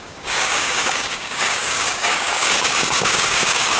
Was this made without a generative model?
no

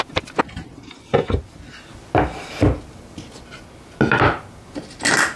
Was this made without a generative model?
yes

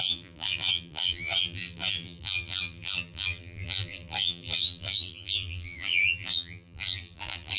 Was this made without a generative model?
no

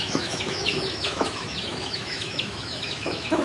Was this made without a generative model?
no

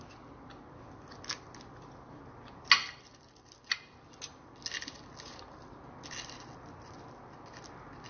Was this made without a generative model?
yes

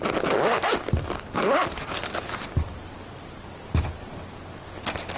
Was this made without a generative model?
yes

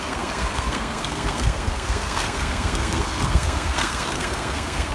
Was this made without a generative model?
no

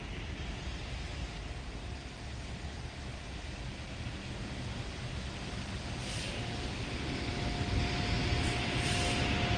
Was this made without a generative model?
yes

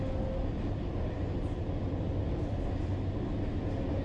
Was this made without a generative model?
yes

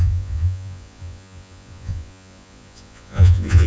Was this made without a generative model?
no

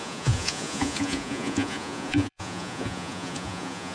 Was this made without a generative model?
no